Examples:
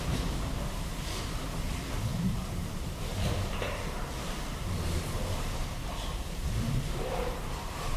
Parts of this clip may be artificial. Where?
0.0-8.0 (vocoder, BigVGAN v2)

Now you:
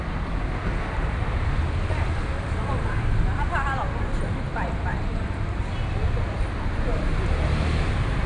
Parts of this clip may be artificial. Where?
none

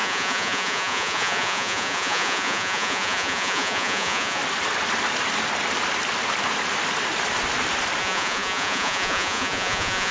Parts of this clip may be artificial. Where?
0.0-4.4 (vocoder, Vocos); 8.0-10.1

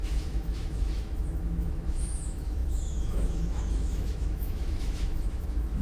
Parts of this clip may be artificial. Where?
0.0-5.8 (autoencoder, DAC-VAE)

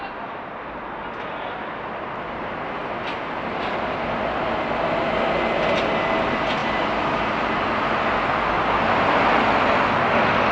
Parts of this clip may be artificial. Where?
none